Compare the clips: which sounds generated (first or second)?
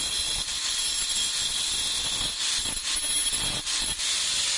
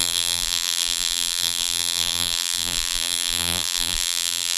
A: second